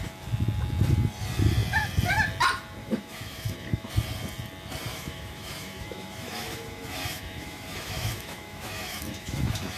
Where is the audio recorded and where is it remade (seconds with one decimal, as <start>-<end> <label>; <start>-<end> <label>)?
0.0-2.8 recorded; 2.8-3.9 remade; 3.9-4.9 recorded; 4.9-9.8 remade

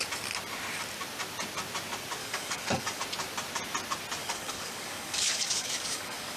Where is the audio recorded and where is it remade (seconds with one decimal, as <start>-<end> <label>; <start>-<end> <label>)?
0.0-2.2 recorded; 2.2-3.0 remade; 3.0-4.2 recorded; 4.2-6.4 remade